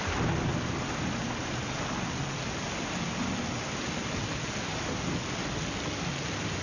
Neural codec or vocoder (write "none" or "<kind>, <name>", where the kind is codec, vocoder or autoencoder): none